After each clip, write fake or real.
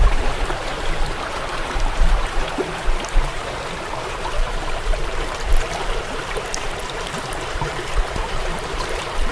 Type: fake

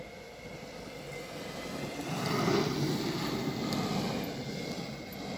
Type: real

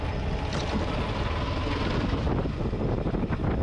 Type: real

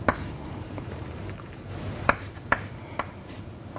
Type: fake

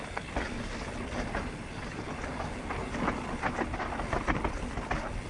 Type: real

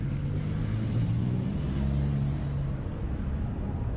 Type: real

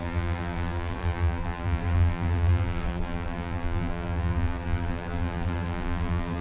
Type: fake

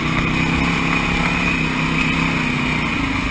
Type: real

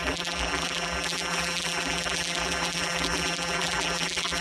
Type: fake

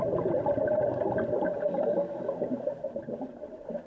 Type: real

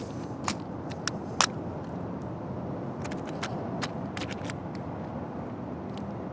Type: real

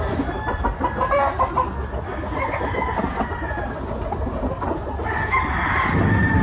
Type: real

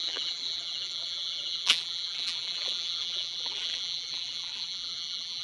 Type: fake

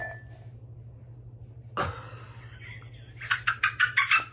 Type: real